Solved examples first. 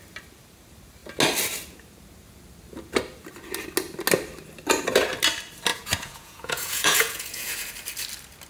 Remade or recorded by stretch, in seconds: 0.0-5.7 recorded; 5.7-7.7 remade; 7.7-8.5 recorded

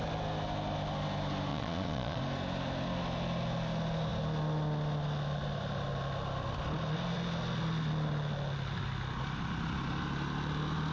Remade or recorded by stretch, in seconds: 0.0-1.5 recorded; 1.5-2.2 remade; 2.2-10.9 recorded

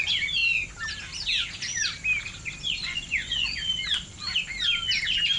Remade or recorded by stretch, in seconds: 0.0-2.8 recorded; 2.8-3.7 remade; 3.7-5.4 recorded

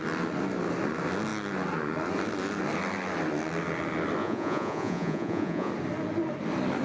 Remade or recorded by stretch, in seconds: 0.0-4.2 recorded; 4.2-5.7 remade; 5.7-6.8 recorded